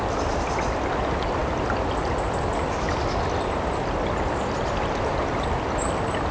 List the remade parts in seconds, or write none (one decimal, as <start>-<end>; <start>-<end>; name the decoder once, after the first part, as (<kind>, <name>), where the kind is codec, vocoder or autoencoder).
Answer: none